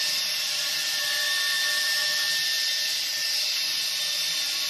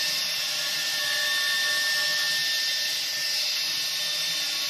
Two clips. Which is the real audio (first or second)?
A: second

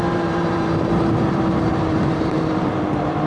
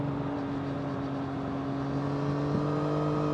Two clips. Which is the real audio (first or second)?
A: second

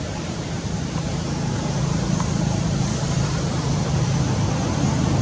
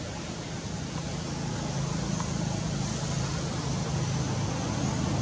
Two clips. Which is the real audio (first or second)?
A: second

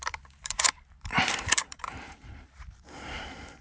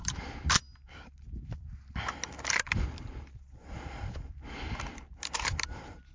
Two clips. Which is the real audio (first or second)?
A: second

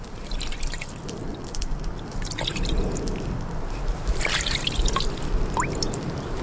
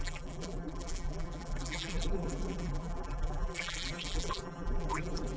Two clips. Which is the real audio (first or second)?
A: first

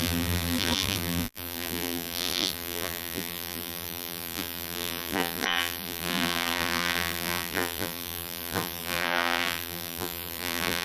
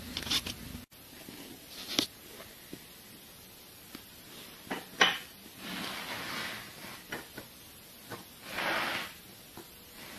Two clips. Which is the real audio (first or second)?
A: second